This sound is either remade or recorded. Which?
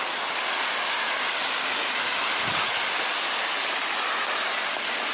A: recorded